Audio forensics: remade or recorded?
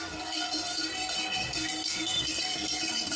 remade